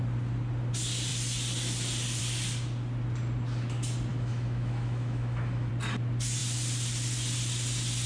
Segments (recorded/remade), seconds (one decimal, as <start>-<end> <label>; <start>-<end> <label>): 0.0-4.1 recorded; 4.1-5.7 remade; 5.7-8.1 recorded